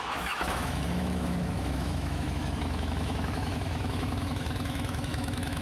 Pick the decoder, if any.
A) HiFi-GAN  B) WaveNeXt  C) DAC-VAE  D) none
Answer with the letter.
C